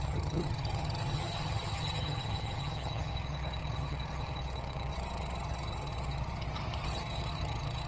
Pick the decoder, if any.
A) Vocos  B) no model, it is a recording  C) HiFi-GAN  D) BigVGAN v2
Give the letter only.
C